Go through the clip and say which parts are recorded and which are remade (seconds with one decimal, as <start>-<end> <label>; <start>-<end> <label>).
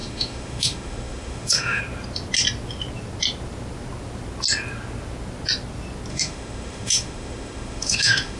0.0-1.8 remade; 1.8-6.1 recorded; 6.1-8.4 remade